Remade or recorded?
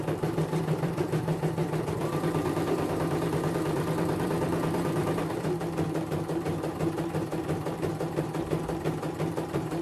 remade